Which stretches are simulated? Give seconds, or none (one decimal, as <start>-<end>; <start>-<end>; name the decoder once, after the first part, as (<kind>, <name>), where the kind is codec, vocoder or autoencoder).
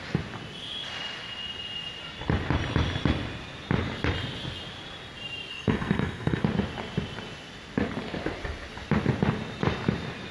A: 5.5-6.4 (codec, SNAC)